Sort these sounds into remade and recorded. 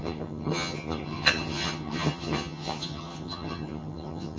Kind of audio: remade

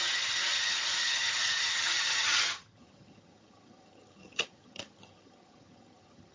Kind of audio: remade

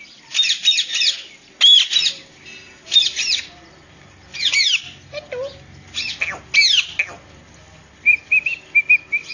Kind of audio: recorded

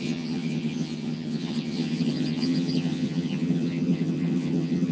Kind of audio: remade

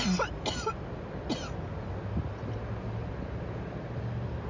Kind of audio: recorded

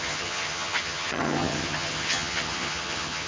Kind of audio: remade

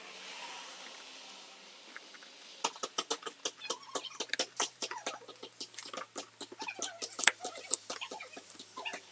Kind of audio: recorded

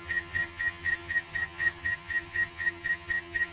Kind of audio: remade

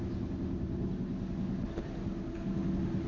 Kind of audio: recorded